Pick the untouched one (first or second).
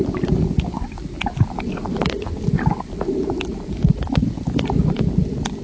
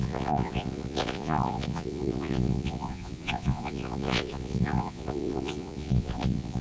first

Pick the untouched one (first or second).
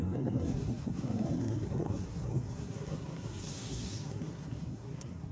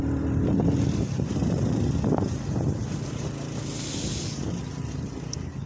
second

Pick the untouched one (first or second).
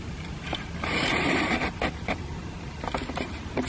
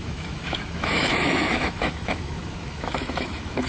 first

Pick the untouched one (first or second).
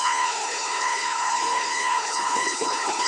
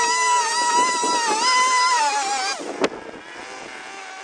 second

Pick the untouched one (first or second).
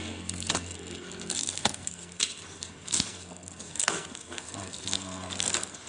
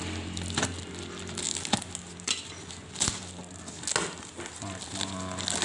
second